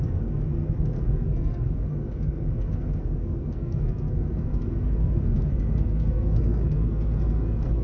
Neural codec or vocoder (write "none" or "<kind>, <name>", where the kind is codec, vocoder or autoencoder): codec, SNAC